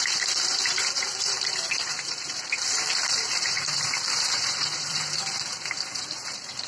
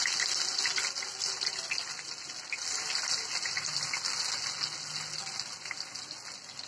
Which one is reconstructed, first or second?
first